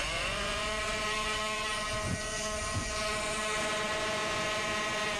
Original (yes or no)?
no